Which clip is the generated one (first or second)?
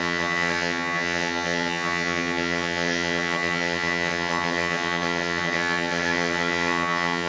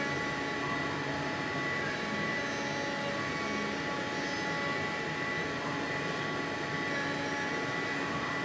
first